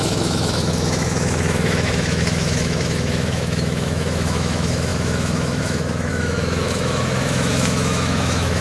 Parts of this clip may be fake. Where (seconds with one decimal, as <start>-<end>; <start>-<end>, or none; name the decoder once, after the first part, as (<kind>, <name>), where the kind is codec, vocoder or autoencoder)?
0.0-8.6 (autoencoder, DAC-VAE)